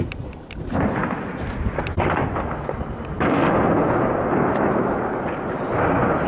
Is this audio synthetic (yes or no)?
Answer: no